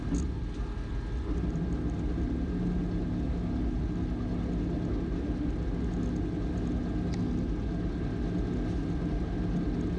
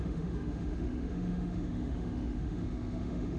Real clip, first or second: first